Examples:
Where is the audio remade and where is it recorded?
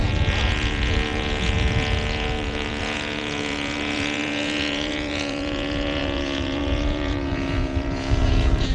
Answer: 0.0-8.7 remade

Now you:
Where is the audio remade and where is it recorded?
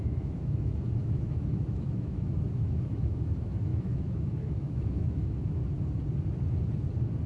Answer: 0.0-5.6 remade; 5.6-7.3 recorded